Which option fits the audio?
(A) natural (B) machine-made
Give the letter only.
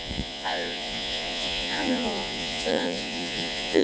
B